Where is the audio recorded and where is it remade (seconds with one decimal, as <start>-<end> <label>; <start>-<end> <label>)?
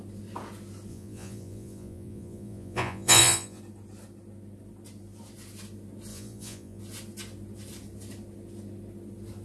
0.0-0.9 recorded; 0.9-3.6 remade; 3.6-6.1 recorded; 6.1-6.8 remade; 6.8-9.4 recorded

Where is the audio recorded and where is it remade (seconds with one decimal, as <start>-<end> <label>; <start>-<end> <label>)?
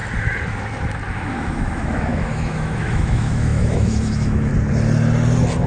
0.0-1.1 recorded; 1.1-4.5 remade; 4.5-5.7 recorded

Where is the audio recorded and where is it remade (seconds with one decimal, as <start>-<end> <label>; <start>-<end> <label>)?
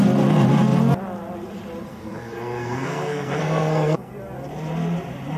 0.0-1.9 recorded; 1.9-4.1 remade; 4.1-5.4 recorded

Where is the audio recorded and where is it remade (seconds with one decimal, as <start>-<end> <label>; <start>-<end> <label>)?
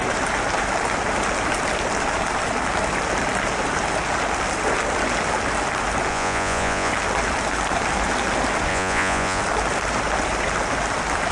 0.0-6.1 recorded; 6.1-6.9 remade; 6.9-8.7 recorded; 8.7-9.4 remade; 9.4-11.3 recorded